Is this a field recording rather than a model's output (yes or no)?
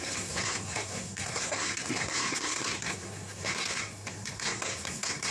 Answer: no